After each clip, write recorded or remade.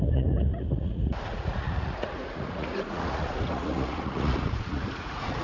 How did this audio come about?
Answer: remade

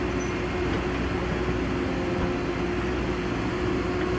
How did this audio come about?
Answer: recorded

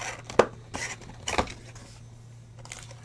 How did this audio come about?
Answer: recorded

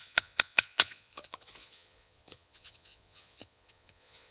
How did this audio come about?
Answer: remade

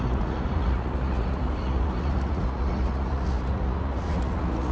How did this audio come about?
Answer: remade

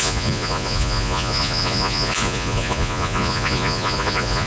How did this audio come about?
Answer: remade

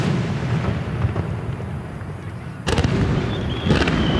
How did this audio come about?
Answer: recorded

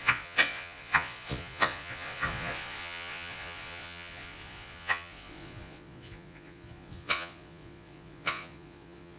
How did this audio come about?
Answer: remade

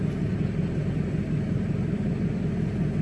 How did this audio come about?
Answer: recorded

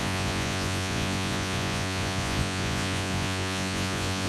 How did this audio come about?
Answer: remade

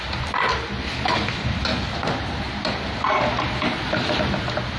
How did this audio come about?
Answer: recorded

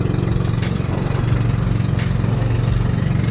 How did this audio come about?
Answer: recorded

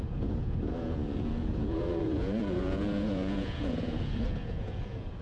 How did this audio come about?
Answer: remade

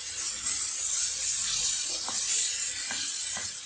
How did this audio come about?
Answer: remade